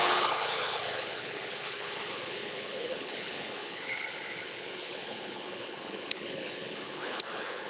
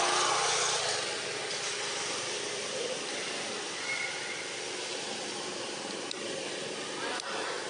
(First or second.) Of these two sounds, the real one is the second